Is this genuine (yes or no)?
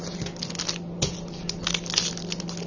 yes